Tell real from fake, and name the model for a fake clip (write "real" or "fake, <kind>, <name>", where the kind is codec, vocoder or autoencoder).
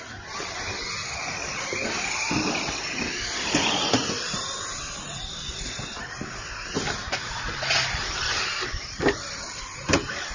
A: real